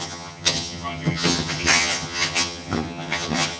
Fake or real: fake